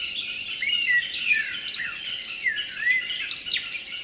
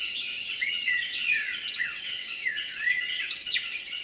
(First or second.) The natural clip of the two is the first